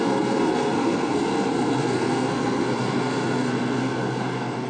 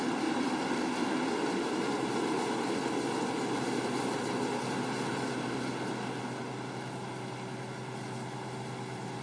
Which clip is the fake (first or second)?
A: first